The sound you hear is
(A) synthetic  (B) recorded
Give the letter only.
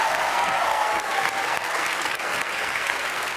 A